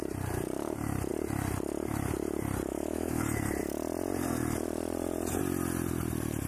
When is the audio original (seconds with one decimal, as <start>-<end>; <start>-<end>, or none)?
0.0-2.7; 3.2-6.5